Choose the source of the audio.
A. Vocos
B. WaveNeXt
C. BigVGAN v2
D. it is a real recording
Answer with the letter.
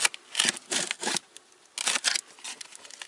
D